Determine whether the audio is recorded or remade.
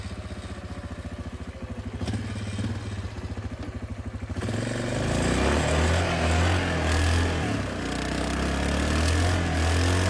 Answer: recorded